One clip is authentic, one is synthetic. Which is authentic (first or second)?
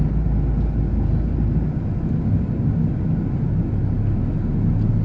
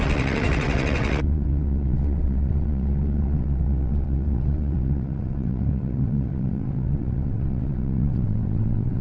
first